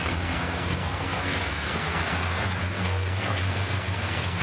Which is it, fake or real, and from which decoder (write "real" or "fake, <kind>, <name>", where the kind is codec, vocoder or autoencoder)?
fake, codec, SNAC